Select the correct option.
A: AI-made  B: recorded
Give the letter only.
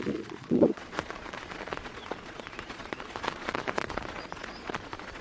A